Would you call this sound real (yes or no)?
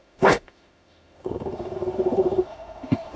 no